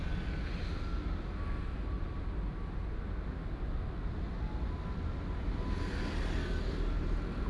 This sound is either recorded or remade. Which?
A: recorded